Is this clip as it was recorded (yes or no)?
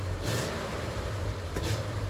no